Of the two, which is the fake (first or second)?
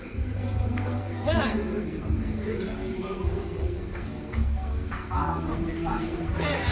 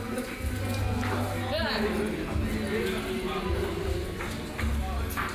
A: first